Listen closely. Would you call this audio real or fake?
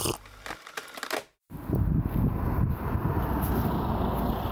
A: real